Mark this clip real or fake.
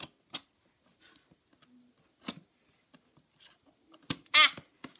real